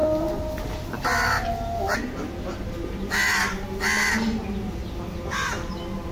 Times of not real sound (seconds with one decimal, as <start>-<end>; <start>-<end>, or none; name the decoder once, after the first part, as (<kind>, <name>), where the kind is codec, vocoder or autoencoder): none

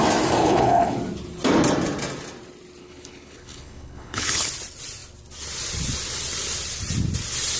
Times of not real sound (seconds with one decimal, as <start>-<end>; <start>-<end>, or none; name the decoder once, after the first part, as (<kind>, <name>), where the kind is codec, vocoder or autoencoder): 0.4-1.0 (codec, HILCodec); 2.8-4.5

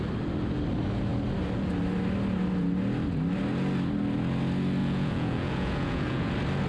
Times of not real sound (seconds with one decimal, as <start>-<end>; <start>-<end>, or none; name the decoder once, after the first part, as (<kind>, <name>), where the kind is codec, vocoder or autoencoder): 4.8-6.3 (vocoder, Vocos)

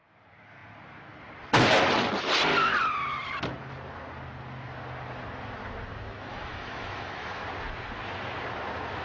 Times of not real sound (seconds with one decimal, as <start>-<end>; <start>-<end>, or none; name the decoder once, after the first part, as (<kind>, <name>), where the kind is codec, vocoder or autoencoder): 6.3-7.4 (autoencoder, DAC-VAE)

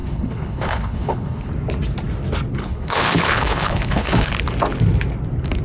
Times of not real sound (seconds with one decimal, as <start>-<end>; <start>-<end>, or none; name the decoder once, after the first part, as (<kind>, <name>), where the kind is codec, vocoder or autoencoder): 0.0-1.5 (codec, HILCodec); 2.6-4.3

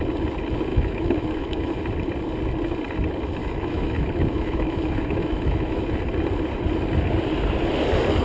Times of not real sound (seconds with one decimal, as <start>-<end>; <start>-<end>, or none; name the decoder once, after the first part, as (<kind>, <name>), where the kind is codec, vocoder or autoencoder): 0.7-1.8 (autoencoder, DAC-VAE); 3.4-5.8

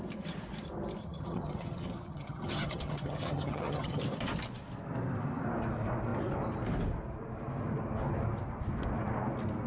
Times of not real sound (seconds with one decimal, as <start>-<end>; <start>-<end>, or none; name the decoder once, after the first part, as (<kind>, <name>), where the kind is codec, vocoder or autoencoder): 1.0-4.0 (vocoder, HiFi-GAN)